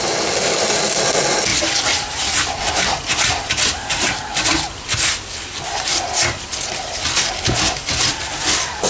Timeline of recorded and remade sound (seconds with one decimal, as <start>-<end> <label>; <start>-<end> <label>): 0.0-8.9 recorded